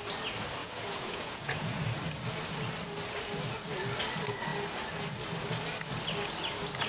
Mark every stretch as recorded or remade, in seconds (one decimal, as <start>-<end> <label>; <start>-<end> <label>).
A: 0.0-0.6 recorded; 0.6-1.8 remade; 1.8-6.9 recorded